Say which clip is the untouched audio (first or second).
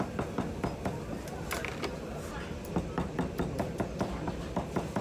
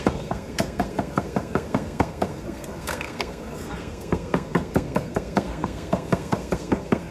first